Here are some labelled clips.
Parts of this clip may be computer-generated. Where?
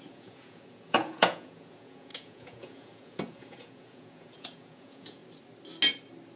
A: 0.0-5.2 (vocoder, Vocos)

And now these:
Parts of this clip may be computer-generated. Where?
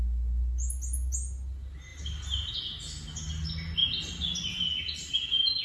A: 1.9-2.5 (vocoder, BigVGAN v2)